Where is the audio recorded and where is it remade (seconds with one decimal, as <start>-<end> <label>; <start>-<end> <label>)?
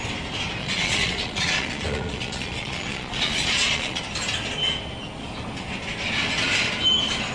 0.0-0.6 recorded; 0.6-4.0 remade; 4.0-7.3 recorded